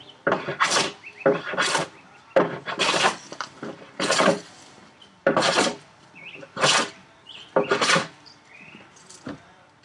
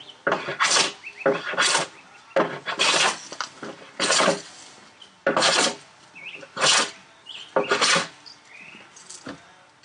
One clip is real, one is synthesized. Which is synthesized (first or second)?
first